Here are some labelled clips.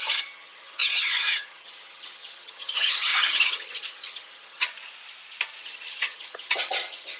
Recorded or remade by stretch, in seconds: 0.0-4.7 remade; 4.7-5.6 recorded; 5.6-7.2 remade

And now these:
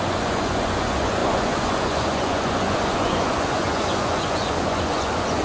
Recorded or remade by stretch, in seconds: 0.0-5.4 remade

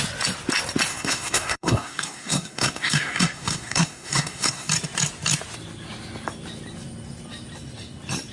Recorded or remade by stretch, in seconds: 0.0-0.9 recorded; 0.9-4.7 remade; 4.7-8.3 recorded

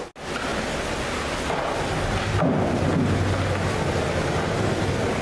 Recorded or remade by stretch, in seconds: 0.0-5.2 recorded

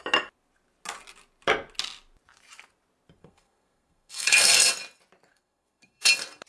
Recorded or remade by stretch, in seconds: 0.0-3.2 recorded; 3.2-4.7 remade; 4.7-5.3 recorded; 5.3-6.1 remade; 6.1-6.5 recorded

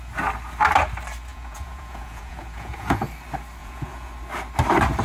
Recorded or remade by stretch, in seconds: 0.0-1.3 recorded; 1.3-3.1 remade; 3.1-3.6 recorded; 3.6-4.1 remade; 4.1-5.0 recorded

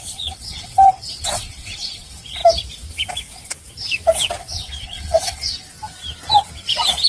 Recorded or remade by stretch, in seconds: 0.0-2.4 remade; 2.4-4.4 recorded; 4.4-5.4 remade; 5.4-7.1 recorded

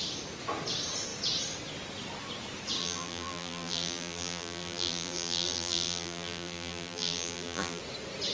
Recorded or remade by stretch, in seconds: 0.0-2.8 recorded; 2.8-7.8 remade; 7.8-8.3 recorded